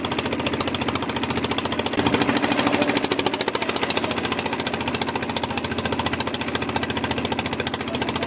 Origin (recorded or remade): recorded